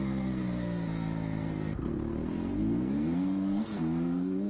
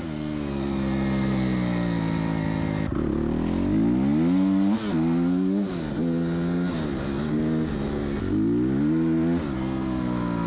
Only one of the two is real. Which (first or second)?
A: second